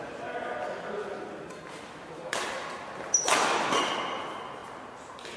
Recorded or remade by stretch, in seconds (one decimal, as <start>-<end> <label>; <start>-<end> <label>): 0.0-5.4 recorded